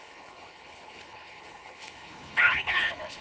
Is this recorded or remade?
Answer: remade